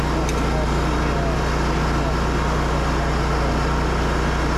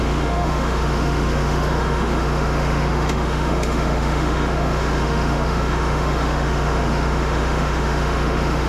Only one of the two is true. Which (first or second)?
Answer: first